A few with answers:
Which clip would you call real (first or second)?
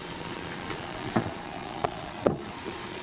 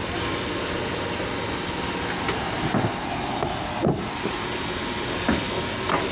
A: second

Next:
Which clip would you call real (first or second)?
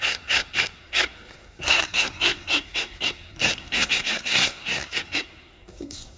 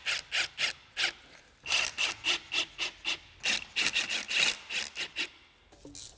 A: second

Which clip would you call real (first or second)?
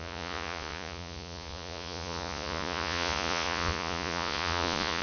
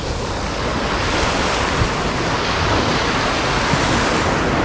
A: second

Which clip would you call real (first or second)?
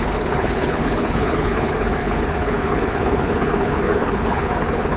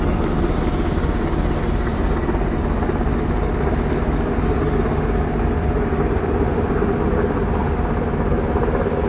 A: second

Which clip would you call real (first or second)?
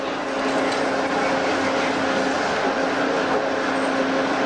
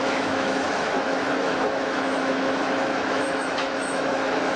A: first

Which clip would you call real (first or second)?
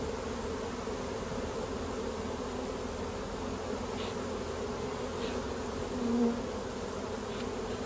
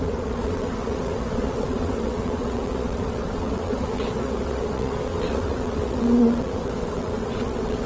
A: first